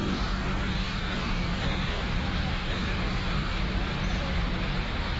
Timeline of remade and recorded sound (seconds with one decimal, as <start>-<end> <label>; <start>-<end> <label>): 0.0-2.0 remade; 2.0-2.5 recorded; 2.5-3.6 remade; 3.6-5.2 recorded